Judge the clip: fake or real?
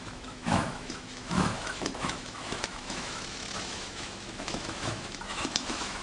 fake